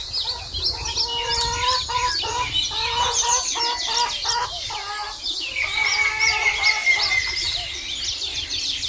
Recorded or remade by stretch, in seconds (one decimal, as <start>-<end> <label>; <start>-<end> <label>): 0.0-8.9 recorded